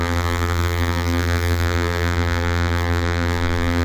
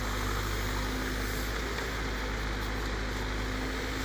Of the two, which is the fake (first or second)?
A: first